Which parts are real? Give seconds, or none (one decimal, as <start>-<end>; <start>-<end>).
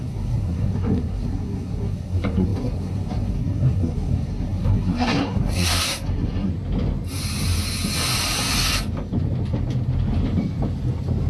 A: 6.5-11.3